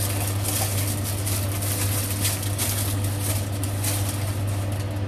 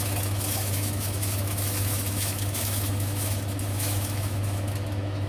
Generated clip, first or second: second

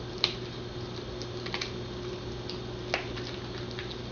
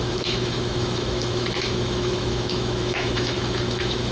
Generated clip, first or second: second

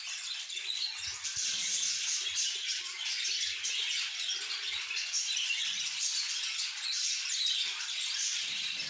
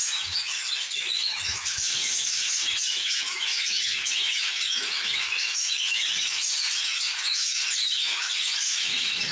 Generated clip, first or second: second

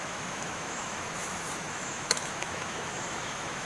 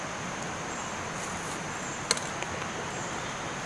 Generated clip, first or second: first